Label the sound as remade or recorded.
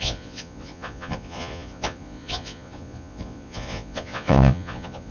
remade